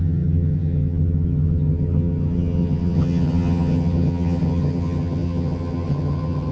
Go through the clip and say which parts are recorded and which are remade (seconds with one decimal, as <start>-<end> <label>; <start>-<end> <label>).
0.0-6.5 remade